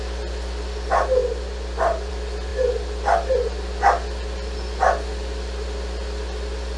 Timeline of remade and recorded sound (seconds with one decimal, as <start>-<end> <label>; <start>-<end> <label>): 0.0-6.8 recorded